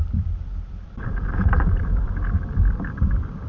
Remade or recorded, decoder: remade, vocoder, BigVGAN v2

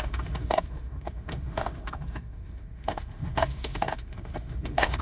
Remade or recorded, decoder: remade, autoencoder, DAC-VAE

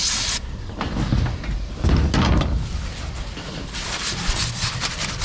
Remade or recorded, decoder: recorded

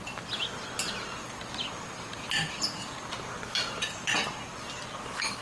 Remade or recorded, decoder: recorded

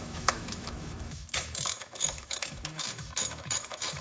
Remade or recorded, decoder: remade, autoencoder, DAC-VAE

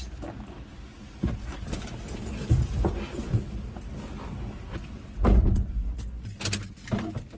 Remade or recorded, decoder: recorded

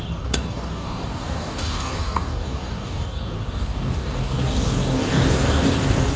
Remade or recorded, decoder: remade, codec, DAC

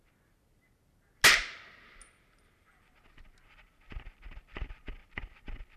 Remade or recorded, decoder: recorded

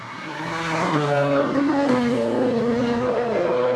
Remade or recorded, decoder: remade, codec, SNAC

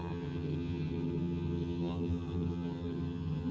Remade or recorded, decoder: remade, vocoder, HiFi-GAN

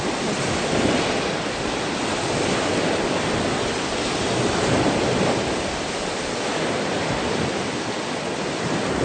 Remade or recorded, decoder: recorded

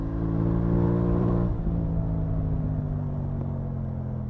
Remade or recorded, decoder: recorded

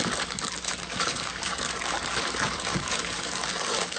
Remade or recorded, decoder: remade, codec, DAC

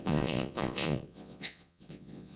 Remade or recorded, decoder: remade, vocoder, Vocos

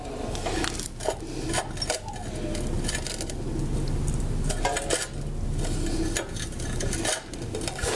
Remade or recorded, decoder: recorded